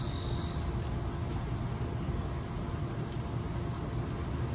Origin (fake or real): real